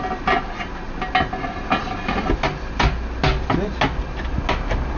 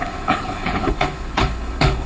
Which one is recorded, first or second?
first